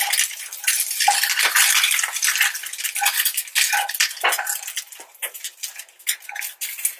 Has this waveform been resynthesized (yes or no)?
no